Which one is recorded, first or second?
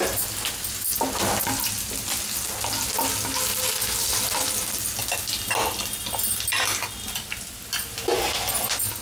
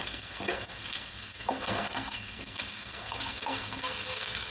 first